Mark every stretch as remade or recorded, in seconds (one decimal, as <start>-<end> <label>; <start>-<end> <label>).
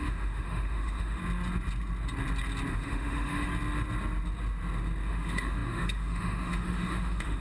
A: 0.0-1.2 remade; 1.2-2.7 recorded; 2.7-3.5 remade; 3.5-5.1 recorded; 5.1-7.4 remade